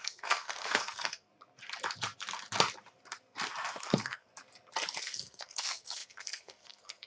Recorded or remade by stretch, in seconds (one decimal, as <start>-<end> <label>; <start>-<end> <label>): 0.0-1.3 remade; 1.3-3.8 recorded; 3.8-4.3 remade; 4.3-5.0 recorded; 5.0-7.1 remade